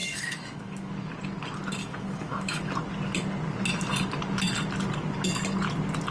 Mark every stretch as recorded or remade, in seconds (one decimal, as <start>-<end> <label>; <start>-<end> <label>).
0.0-0.9 remade; 0.9-1.8 recorded; 1.8-2.7 remade; 2.7-6.1 recorded